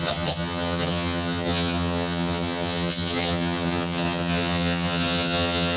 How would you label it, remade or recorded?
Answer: remade